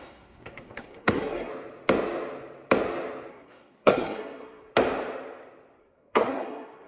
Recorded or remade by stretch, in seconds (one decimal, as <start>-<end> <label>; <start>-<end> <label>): 0.0-1.5 remade; 1.5-3.3 recorded; 3.3-4.7 remade; 4.7-5.8 recorded; 5.8-6.9 remade

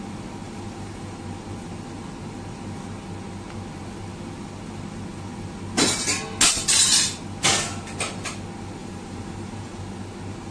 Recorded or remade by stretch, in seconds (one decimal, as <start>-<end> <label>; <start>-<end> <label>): 0.0-0.4 recorded; 0.4-1.0 remade; 1.0-8.8 recorded; 8.8-9.8 remade; 9.8-10.5 recorded

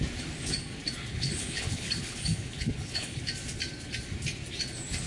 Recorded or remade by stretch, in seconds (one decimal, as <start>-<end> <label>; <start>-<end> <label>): 0.0-1.1 recorded; 1.1-3.2 remade; 3.2-5.1 recorded

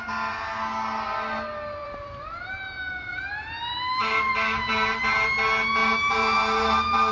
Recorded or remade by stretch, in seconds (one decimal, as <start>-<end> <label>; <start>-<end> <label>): 0.0-1.8 recorded; 1.8-5.0 remade; 5.0-5.8 recorded; 5.8-7.1 remade

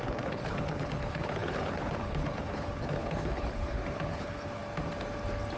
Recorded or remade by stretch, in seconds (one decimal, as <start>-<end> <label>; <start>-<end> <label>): 0.0-4.6 remade; 4.6-5.6 recorded

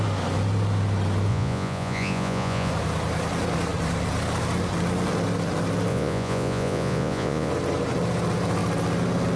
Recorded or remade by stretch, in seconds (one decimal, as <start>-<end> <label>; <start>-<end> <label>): 0.0-1.3 recorded; 1.3-2.7 remade; 2.7-5.9 recorded; 5.9-7.5 remade; 7.5-9.4 recorded

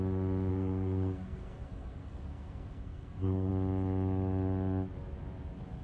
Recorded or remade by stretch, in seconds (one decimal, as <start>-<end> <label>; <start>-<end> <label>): 0.0-0.5 recorded; 0.5-3.5 remade; 3.5-5.8 recorded

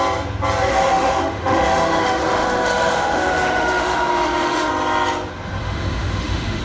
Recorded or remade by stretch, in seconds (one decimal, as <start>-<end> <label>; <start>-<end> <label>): 0.0-0.7 recorded; 0.7-4.7 remade; 4.7-5.6 recorded; 5.6-6.6 remade